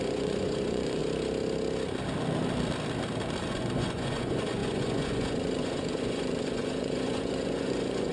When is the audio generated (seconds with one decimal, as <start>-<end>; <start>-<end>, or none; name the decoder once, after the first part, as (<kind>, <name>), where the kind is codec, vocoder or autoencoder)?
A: 0.0-1.0 (vocoder, Vocos); 3.5-8.1